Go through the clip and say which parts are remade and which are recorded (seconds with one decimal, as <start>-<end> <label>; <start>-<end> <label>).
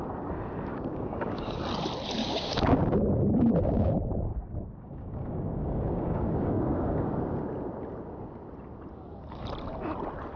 0.0-0.7 recorded; 0.7-1.6 remade; 1.6-2.2 recorded; 2.2-2.8 remade; 2.8-4.3 recorded; 4.3-7.2 remade; 7.2-10.4 recorded